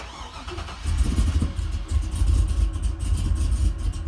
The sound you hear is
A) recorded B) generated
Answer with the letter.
A